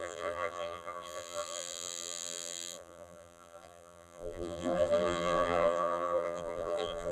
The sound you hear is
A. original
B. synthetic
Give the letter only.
B